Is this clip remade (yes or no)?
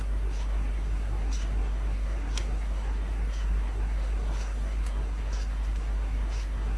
yes